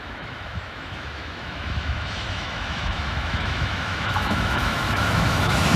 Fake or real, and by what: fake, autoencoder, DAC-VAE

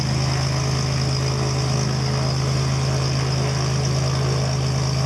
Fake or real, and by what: real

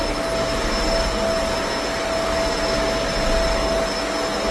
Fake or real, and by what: real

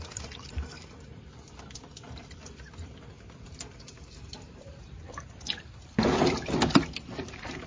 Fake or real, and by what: fake, vocoder, BigVGAN v2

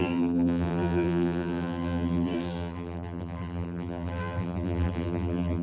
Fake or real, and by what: fake, vocoder, BigVGAN v2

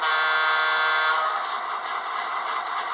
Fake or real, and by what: real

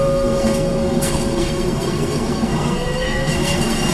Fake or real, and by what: fake, codec, SNAC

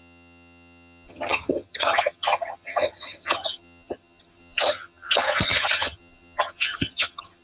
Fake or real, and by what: fake, vocoder, HiFi-GAN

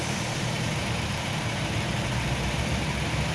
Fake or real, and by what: fake, vocoder, BigVGAN v2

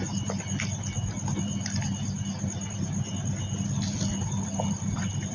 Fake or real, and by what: real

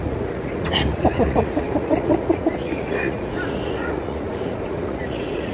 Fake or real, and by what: fake, vocoder, Vocos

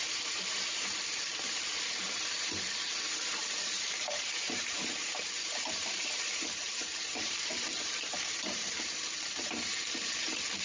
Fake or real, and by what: fake, vocoder, BigVGAN v2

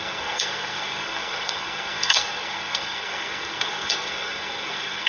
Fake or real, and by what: fake, codec, SNAC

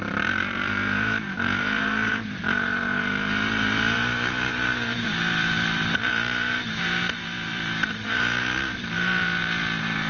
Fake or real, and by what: fake, vocoder, BigVGAN v2